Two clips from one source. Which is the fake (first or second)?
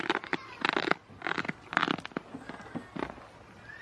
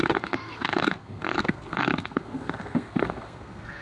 second